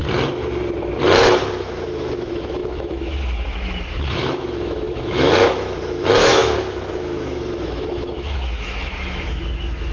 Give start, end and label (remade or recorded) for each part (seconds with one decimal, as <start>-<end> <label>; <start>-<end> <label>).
0.0-1.2 recorded; 1.2-9.9 remade